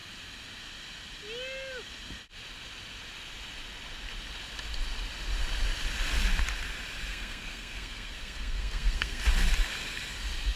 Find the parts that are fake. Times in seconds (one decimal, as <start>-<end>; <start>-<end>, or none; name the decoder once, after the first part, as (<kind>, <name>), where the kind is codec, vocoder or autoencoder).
7.1-9.2 (codec, SNAC)